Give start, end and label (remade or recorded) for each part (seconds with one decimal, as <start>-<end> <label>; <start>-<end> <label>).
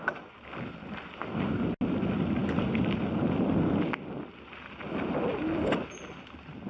0.0-6.7 recorded